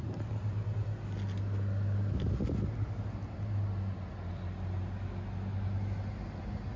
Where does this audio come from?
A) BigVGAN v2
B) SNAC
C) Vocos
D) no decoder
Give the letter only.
D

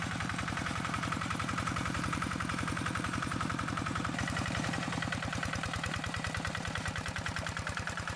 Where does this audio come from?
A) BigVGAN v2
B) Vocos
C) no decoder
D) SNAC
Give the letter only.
A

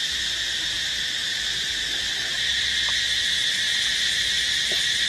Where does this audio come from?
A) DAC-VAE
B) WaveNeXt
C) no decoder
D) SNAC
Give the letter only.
C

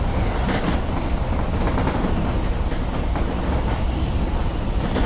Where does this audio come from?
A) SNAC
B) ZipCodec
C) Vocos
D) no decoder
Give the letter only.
D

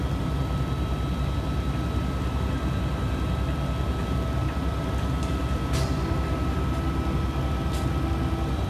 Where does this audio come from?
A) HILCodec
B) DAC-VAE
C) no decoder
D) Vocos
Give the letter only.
C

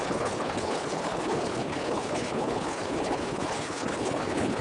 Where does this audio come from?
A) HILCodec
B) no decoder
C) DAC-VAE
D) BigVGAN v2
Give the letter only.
A